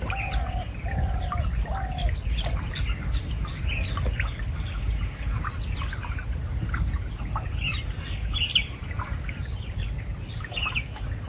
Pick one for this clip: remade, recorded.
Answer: recorded